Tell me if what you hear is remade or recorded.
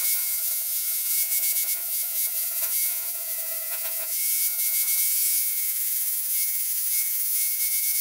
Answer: remade